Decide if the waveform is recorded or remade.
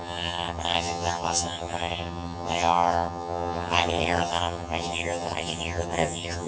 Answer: remade